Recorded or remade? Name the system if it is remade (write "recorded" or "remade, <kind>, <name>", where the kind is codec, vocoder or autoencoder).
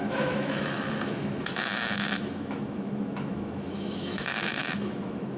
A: remade, autoencoder, DAC-VAE